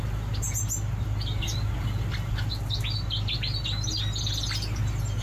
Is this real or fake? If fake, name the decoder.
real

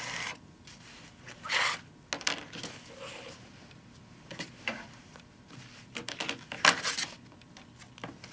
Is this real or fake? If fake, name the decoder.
real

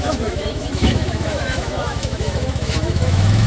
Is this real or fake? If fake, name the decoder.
fake, autoencoder, DAC-VAE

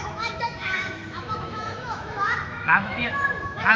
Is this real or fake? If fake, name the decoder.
fake, autoencoder, DAC-VAE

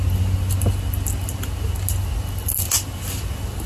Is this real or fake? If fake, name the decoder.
real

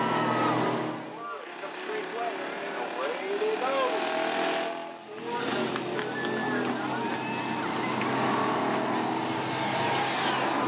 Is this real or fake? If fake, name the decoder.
real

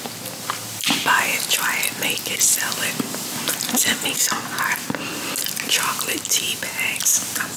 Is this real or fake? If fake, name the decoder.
real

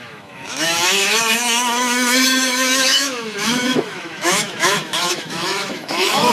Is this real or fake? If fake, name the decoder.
fake, autoencoder, DAC-VAE